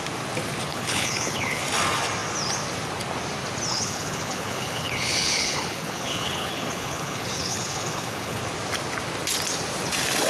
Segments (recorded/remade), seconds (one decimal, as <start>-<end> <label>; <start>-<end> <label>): 0.0-0.7 recorded; 0.7-1.6 remade; 1.6-3.7 recorded; 3.7-8.4 remade; 8.4-10.3 recorded